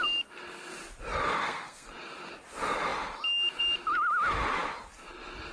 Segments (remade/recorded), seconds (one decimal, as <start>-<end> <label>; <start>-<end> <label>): 0.0-1.4 recorded; 1.4-1.9 remade; 1.9-5.5 recorded

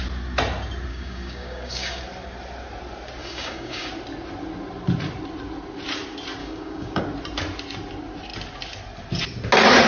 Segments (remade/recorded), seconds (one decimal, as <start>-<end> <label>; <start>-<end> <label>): 0.0-0.9 recorded; 0.9-2.0 remade; 2.0-3.2 recorded; 3.2-3.9 remade; 3.9-6.4 recorded; 6.4-7.0 remade; 7.0-9.9 recorded

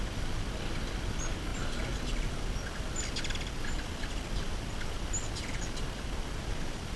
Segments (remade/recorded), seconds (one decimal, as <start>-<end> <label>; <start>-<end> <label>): 0.0-7.0 recorded

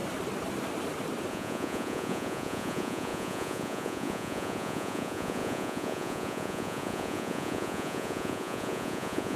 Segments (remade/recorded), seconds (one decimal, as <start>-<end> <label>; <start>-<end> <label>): 0.0-1.3 recorded; 1.3-9.4 remade

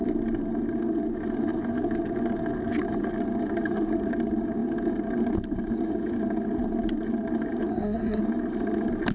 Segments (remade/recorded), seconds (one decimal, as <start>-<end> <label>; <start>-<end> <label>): 0.0-7.7 recorded; 7.7-8.2 remade; 8.2-9.1 recorded

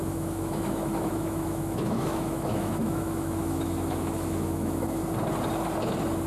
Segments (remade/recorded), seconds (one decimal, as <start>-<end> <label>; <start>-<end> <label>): 0.0-5.0 remade; 5.0-6.3 recorded